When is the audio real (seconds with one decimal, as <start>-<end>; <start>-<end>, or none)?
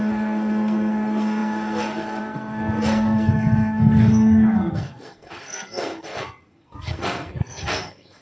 none